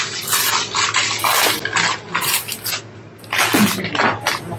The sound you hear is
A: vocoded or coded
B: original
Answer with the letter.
B